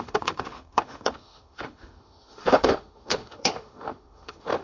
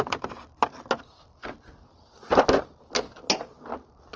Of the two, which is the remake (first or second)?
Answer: first